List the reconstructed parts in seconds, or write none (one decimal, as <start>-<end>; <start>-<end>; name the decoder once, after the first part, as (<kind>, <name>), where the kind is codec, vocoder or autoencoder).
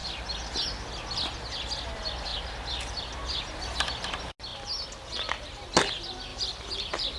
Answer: 6.3-7.2 (vocoder, BigVGAN v2)